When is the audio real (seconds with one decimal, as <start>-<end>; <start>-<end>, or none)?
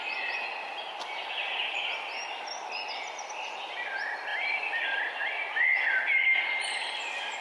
0.0-4.3; 5.0-7.4